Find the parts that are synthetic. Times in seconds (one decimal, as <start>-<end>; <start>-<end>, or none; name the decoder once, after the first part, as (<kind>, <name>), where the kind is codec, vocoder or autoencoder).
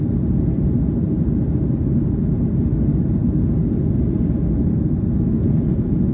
none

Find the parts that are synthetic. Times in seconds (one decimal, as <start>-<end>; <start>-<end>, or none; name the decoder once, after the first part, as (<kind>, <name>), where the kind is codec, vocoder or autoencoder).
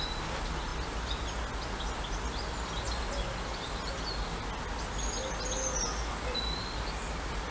none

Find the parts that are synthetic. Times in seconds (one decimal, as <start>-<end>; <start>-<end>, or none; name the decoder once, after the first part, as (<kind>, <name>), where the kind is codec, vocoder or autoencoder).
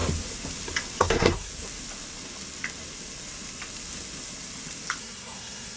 1.0-1.5 (codec, SNAC); 5.0-5.8